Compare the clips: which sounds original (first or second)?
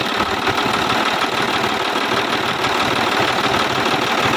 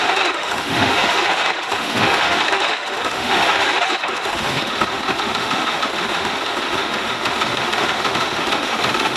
first